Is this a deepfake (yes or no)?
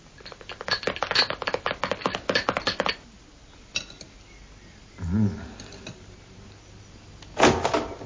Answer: no